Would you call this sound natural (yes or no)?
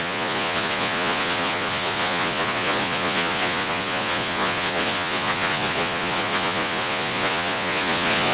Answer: no